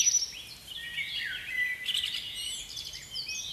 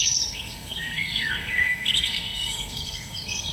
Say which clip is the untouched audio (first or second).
first